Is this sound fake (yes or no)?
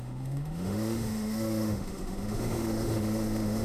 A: yes